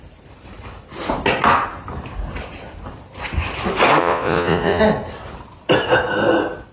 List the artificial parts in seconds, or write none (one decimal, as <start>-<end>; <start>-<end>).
4.0-4.8